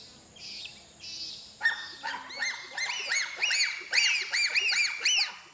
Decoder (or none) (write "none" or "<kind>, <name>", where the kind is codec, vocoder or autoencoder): none